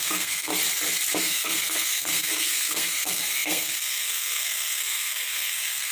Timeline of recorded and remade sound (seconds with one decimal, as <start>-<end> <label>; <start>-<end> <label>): 0.0-0.5 remade; 0.5-1.2 recorded; 1.2-5.9 remade